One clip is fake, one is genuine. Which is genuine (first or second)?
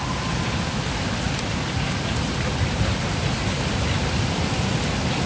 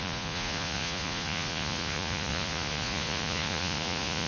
first